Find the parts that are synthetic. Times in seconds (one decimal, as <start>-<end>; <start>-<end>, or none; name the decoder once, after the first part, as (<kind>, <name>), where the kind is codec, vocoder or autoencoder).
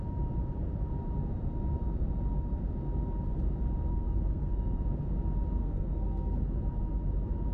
3.9-4.8 (codec, SNAC); 5.6-6.4